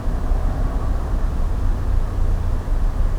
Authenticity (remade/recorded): recorded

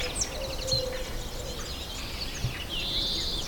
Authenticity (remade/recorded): recorded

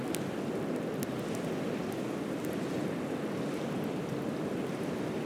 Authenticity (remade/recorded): recorded